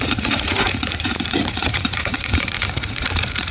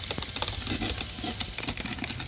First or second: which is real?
second